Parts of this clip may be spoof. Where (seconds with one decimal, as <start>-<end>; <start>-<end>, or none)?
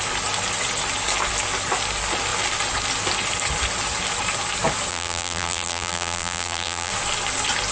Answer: 4.9-6.9